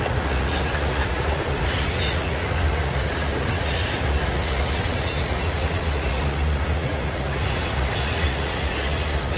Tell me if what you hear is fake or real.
fake